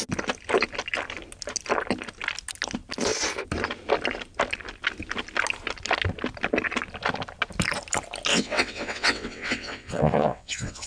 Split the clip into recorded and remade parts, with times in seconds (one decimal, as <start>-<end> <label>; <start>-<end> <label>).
0.0-8.3 recorded; 8.3-10.9 remade